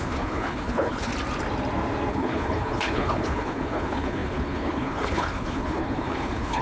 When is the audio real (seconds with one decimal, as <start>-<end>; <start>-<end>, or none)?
1.1-2.1